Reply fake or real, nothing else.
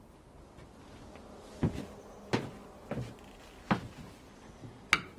real